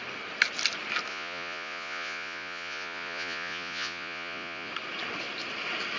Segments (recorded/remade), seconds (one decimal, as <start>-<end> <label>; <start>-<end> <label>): 0.0-1.1 recorded; 1.1-4.7 remade; 4.7-6.0 recorded